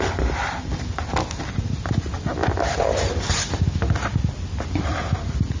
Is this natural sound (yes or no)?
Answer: yes